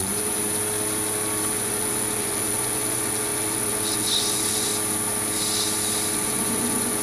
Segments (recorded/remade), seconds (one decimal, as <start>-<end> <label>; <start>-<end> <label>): 0.0-0.4 remade; 0.4-1.5 recorded; 1.5-4.7 remade; 4.7-6.1 recorded; 6.1-7.0 remade